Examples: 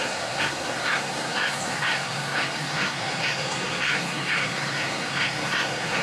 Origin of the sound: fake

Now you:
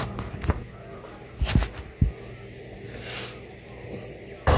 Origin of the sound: real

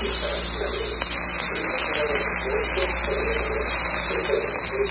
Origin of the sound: real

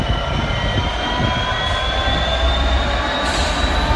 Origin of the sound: real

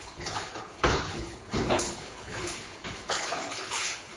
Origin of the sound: fake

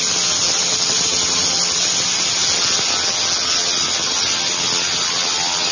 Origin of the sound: real